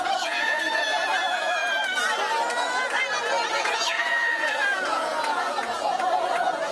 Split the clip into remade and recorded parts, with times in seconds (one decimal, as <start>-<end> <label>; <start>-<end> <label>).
0.0-1.6 remade; 1.6-3.5 recorded; 3.5-6.7 remade